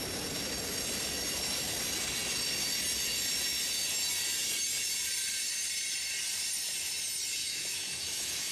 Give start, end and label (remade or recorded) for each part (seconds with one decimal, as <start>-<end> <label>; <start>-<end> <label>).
0.0-7.4 recorded; 7.4-8.5 remade